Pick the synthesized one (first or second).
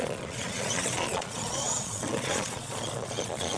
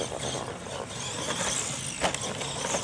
first